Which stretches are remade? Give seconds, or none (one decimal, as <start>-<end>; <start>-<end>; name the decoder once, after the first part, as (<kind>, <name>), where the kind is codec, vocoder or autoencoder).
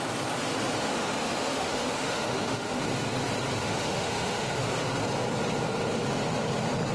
0.8-2.8 (autoencoder, DAC-VAE); 3.6-4.6